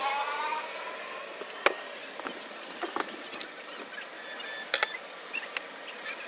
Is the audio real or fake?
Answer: real